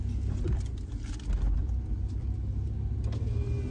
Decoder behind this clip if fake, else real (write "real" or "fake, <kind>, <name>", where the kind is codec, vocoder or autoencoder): real